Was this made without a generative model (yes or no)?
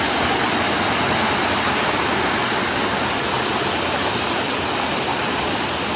yes